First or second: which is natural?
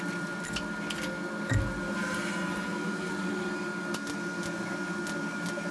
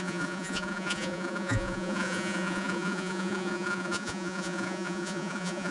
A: first